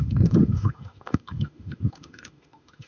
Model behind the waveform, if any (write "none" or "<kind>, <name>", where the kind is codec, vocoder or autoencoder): autoencoder, DAC-VAE